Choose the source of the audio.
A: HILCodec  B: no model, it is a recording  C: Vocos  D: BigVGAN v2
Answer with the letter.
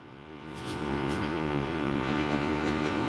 C